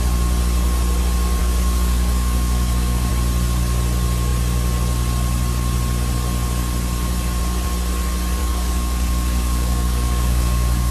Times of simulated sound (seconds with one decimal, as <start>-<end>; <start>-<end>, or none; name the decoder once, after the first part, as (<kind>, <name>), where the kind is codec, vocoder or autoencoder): 1.4-3.1 (codec, DAC); 8.4-10.9